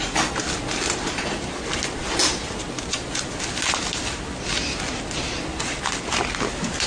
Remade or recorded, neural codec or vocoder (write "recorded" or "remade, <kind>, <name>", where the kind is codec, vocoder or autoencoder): recorded